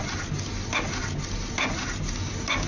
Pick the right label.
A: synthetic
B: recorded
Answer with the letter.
B